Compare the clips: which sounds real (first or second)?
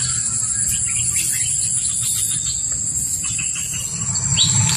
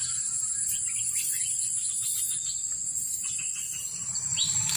first